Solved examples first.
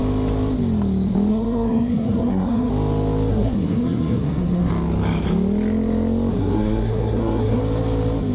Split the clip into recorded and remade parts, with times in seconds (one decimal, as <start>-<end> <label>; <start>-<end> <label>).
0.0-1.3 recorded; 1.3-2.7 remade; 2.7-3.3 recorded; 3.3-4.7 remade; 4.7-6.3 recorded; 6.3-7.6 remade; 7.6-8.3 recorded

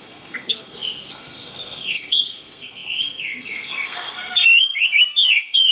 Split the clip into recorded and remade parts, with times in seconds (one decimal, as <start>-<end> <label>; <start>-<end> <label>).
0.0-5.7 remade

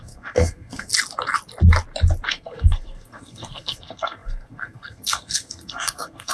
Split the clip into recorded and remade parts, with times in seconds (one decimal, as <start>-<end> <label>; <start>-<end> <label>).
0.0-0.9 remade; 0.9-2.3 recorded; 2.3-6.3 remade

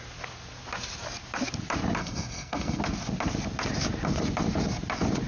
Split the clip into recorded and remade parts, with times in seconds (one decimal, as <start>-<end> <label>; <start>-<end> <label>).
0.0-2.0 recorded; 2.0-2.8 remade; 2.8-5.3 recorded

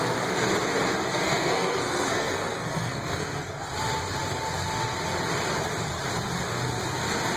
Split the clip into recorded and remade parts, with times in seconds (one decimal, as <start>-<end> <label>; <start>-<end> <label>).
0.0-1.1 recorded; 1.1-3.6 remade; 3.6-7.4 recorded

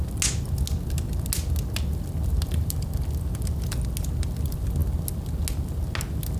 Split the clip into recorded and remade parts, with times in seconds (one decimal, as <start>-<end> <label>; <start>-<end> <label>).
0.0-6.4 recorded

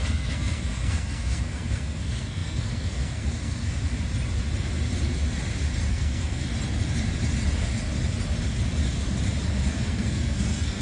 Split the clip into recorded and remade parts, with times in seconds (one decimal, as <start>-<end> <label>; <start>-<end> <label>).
0.0-3.8 remade; 3.8-5.9 recorded; 5.9-6.5 remade; 6.5-9.7 recorded; 9.7-10.8 remade

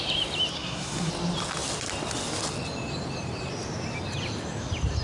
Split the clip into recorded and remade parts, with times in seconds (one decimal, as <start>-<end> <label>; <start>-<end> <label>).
0.0-0.5 recorded; 0.5-1.1 remade; 1.1-5.0 recorded